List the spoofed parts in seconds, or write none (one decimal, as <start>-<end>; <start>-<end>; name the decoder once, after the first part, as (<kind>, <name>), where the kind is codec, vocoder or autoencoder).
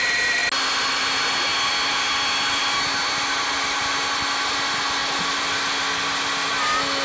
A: none